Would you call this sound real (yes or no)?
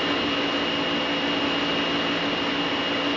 yes